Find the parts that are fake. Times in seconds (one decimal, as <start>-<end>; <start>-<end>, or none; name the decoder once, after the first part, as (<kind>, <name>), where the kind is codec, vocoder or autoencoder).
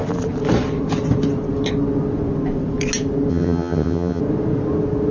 3.3-4.2 (vocoder, HiFi-GAN)